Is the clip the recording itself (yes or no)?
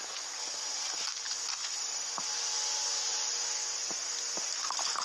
yes